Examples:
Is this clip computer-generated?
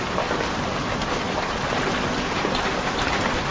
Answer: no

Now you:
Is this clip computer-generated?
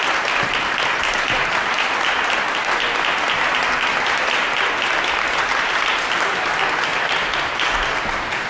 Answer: no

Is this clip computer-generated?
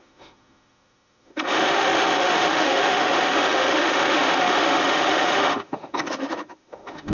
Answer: yes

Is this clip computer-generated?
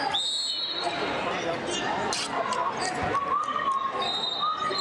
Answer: no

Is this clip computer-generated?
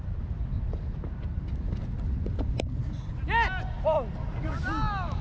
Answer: no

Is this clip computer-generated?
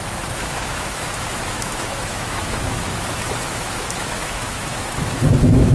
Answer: yes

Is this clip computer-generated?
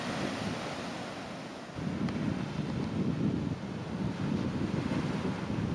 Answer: no